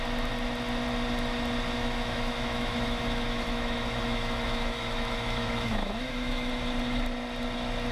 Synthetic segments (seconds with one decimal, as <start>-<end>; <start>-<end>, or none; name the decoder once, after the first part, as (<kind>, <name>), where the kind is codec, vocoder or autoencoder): 1.8-6.5 (autoencoder, DAC-VAE)